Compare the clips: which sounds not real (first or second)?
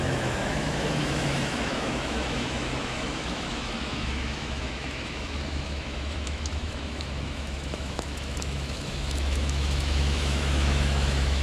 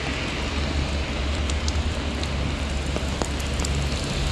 first